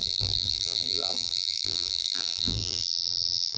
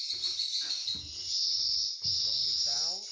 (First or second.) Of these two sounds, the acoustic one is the second